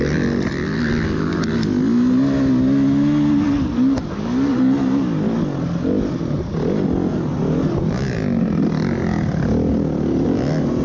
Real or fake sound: real